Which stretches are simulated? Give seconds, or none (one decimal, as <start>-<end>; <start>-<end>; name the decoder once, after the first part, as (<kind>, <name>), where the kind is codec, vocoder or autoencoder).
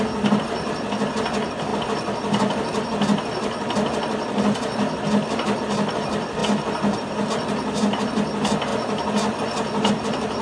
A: none